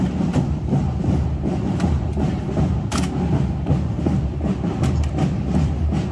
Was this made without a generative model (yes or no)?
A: yes